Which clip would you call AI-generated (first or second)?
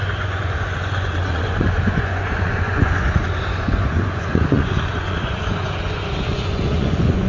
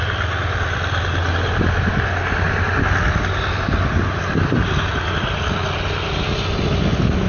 first